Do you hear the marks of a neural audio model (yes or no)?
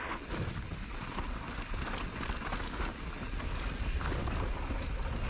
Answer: no